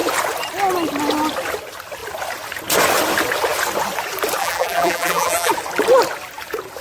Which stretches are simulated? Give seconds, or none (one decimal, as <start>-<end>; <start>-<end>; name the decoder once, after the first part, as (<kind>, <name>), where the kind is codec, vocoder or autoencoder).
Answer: 4.4-5.5 (vocoder, BigVGAN v2)